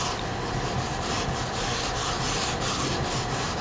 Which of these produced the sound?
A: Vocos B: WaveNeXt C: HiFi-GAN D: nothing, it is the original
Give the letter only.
D